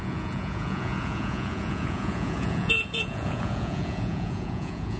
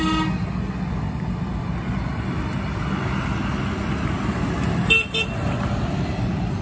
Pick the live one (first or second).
second